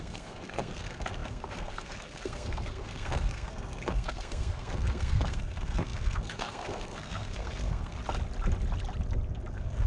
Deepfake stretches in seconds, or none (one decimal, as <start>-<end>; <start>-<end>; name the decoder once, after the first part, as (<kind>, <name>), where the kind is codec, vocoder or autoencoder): 0.0-8.0 (codec, SNAC); 9.5-9.9